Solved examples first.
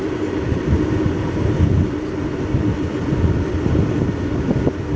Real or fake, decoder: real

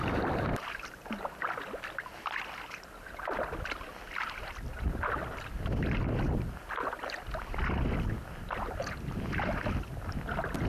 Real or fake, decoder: real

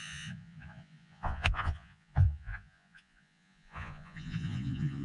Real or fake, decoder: fake, vocoder, Vocos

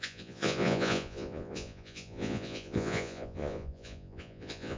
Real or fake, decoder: fake, vocoder, Vocos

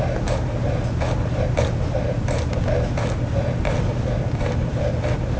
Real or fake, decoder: real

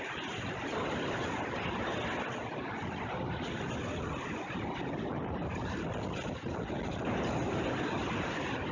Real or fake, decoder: real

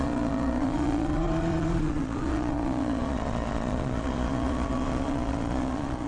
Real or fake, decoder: fake, vocoder, Vocos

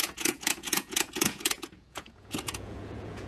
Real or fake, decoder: fake, vocoder, Vocos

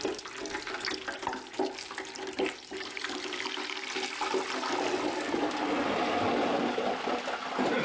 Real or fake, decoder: real